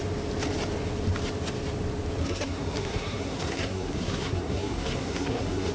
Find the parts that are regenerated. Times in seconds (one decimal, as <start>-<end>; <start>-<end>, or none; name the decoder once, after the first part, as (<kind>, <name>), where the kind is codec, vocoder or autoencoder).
2.2-5.7 (codec, SNAC)